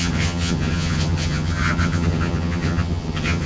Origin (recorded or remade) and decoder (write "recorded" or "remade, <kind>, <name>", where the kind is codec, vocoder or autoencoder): remade, vocoder, HiFi-GAN